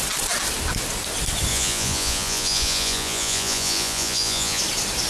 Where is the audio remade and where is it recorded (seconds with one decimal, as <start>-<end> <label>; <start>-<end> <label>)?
0.0-1.5 recorded; 1.5-4.6 remade; 4.6-5.1 recorded